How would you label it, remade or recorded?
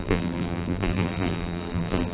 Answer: remade